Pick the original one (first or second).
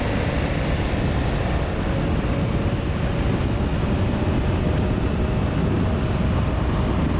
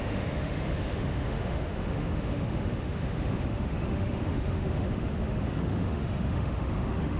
first